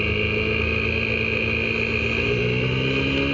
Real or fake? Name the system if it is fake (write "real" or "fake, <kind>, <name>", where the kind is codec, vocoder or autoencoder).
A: real